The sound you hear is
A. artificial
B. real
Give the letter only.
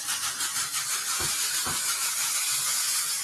B